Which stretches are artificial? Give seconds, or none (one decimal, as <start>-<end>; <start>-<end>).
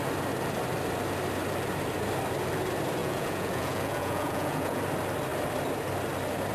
3.0-4.8